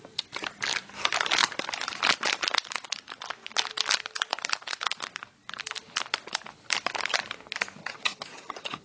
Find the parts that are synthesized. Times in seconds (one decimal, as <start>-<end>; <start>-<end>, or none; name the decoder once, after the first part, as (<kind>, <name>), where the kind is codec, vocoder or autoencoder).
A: 7.8-8.8 (vocoder, HiFi-GAN)